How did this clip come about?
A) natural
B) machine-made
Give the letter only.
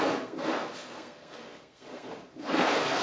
B